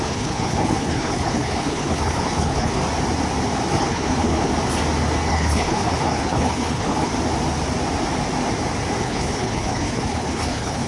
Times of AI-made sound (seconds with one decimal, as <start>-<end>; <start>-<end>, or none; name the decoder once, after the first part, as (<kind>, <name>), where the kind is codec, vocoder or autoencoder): 0.0-2.8 (codec, HILCodec); 3.7-4.5; 5.3-7.1; 9.0-10.9